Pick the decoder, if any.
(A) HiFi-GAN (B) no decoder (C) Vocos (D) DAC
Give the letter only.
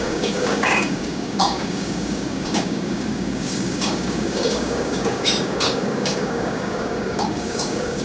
D